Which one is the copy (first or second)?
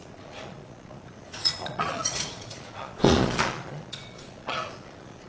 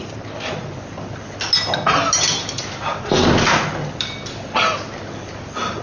first